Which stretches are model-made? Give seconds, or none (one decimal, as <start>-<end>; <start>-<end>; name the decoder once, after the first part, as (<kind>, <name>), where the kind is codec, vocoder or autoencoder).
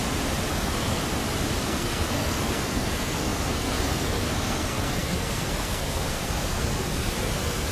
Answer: 0.5-1.0 (codec, SNAC); 1.6-7.7